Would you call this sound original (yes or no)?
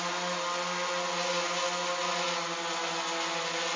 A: yes